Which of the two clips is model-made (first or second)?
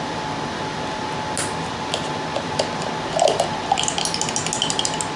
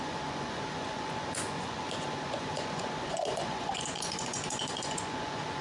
second